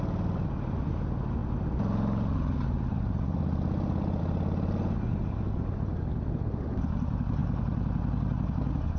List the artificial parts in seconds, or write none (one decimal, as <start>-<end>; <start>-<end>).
0.0-9.0